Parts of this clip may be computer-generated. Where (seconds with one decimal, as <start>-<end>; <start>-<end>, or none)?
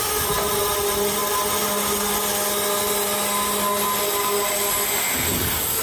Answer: none